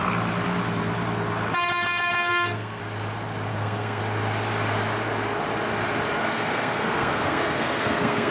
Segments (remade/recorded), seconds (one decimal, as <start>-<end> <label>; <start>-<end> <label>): 0.0-2.2 recorded; 2.2-2.8 remade; 2.8-3.5 recorded; 3.5-4.0 remade; 4.0-6.2 recorded; 6.2-8.3 remade